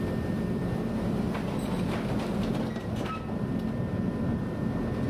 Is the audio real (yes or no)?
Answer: yes